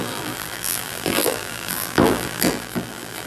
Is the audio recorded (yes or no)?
no